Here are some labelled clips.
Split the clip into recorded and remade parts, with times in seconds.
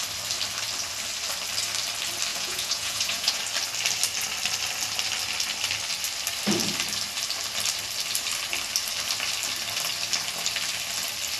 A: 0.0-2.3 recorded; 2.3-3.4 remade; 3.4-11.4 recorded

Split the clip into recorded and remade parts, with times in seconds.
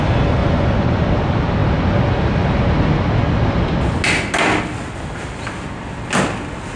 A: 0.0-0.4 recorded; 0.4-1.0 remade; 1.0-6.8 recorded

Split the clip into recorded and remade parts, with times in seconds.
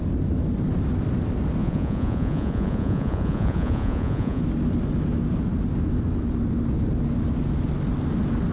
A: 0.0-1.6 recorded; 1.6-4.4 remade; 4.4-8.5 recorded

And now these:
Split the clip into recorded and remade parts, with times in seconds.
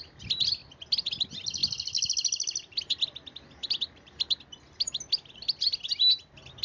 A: 0.0-6.6 recorded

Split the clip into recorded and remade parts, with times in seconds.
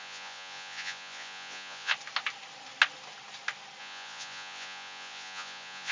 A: 0.0-1.9 remade; 1.9-3.8 recorded; 3.8-5.9 remade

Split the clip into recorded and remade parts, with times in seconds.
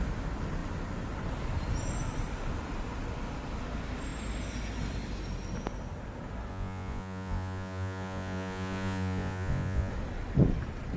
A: 0.0-6.5 recorded; 6.5-9.9 remade; 9.9-11.0 recorded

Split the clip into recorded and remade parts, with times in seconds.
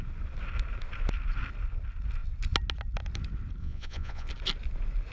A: 0.0-3.6 recorded; 3.6-4.3 remade; 4.3-5.1 recorded